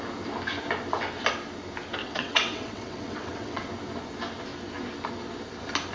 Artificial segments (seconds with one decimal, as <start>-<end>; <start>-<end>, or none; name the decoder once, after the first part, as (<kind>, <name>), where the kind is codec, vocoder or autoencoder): 2.0-3.7 (vocoder, WaveNeXt)